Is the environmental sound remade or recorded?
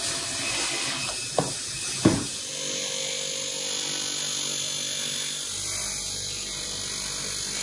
recorded